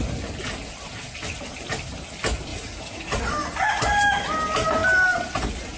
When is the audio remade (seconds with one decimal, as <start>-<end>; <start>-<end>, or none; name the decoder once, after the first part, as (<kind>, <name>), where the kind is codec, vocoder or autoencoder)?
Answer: 2.5-3.2 (vocoder, Vocos)